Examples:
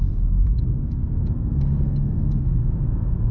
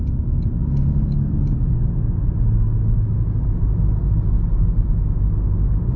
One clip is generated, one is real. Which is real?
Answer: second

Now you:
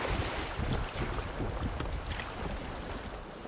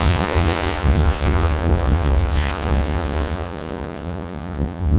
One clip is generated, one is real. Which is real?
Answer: first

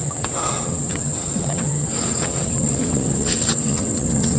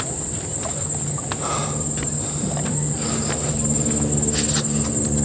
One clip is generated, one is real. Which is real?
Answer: second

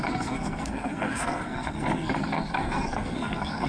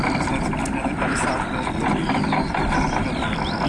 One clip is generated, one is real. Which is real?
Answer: second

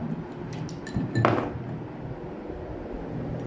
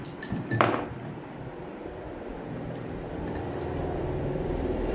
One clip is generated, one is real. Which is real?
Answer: first